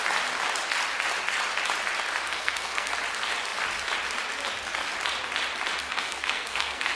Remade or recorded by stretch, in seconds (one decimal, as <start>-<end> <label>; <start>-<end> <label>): 0.0-2.2 recorded; 2.2-2.9 remade; 2.9-5.8 recorded; 5.8-6.9 remade